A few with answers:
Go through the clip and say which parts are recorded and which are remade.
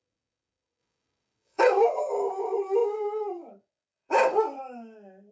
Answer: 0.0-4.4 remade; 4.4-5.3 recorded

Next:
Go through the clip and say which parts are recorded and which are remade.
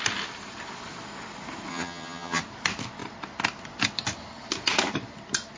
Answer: 0.0-1.7 recorded; 1.7-2.4 remade; 2.4-5.6 recorded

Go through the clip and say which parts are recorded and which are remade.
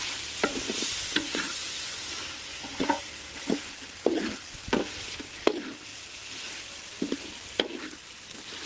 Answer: 0.0-0.9 recorded; 0.9-2.0 remade; 2.0-2.5 recorded; 2.5-3.0 remade; 3.0-8.7 recorded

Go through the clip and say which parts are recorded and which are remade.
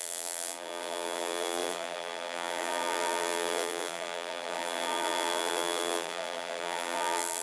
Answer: 0.0-7.4 remade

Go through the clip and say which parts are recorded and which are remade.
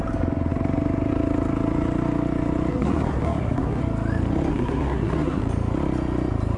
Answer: 0.0-2.7 recorded; 2.7-3.8 remade; 3.8-4.5 recorded; 4.5-5.4 remade; 5.4-6.6 recorded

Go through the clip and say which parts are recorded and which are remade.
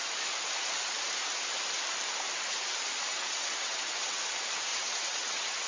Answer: 0.0-3.1 recorded; 3.1-4.2 remade; 4.2-4.7 recorded; 4.7-5.7 remade